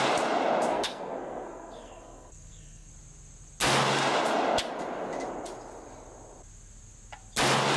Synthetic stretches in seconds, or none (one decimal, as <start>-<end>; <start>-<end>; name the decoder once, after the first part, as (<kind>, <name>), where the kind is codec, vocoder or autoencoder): 0.7-2.9 (codec, SNAC)